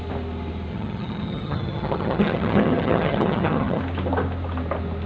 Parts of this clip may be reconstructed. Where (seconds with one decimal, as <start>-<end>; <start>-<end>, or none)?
0.7-3.8